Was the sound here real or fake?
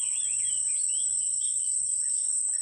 fake